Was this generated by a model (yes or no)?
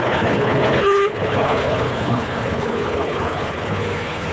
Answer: yes